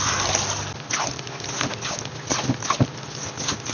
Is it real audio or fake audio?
real